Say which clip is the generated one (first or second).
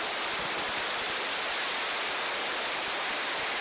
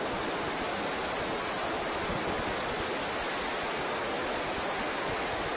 first